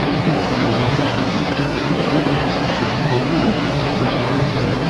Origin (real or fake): fake